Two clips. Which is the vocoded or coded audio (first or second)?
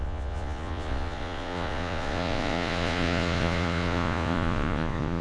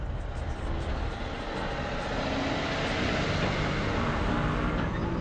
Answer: first